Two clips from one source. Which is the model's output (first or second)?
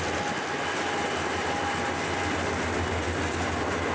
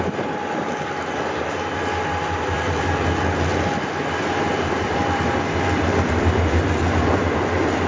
second